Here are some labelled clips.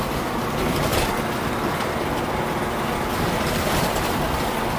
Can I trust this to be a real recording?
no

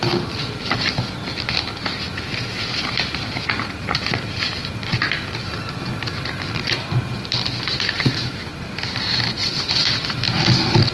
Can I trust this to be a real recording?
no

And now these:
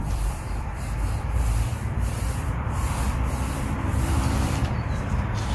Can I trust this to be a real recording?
no